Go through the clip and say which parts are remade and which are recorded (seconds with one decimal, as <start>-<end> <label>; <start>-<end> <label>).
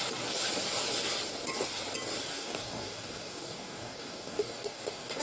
0.0-2.3 recorded; 2.3-5.2 remade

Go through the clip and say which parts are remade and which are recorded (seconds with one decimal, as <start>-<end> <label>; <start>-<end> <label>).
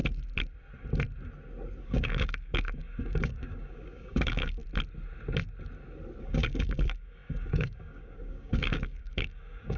0.0-1.8 recorded; 1.8-4.6 remade; 4.6-6.2 recorded; 6.2-9.8 remade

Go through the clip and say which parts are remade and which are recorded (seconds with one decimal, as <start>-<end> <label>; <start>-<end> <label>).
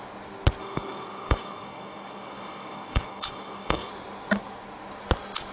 0.0-0.6 recorded; 0.6-3.9 remade; 3.9-5.5 recorded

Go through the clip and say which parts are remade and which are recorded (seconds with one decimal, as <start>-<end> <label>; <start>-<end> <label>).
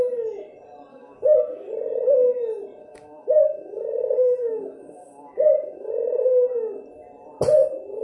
0.0-0.9 recorded; 0.9-1.7 remade; 1.7-2.8 recorded; 2.8-5.9 remade; 5.9-8.0 recorded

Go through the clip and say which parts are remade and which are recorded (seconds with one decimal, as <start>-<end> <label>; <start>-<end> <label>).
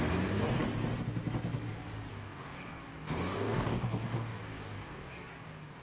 0.0-2.1 recorded; 2.1-5.8 remade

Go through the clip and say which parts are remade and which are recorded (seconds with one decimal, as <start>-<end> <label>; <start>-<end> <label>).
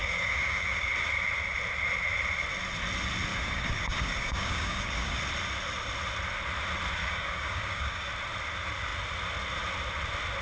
0.0-0.9 remade; 0.9-3.3 recorded; 3.3-5.2 remade; 5.2-7.0 recorded; 7.0-8.1 remade; 8.1-10.4 recorded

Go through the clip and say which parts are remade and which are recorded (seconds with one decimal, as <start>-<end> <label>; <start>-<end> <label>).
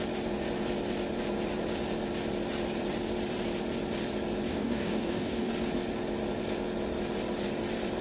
0.0-4.5 recorded; 4.5-5.5 remade; 5.5-8.0 recorded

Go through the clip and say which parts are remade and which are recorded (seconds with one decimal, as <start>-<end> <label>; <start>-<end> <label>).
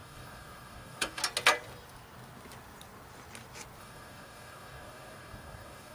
0.0-1.2 remade; 1.2-3.8 recorded; 3.8-5.9 remade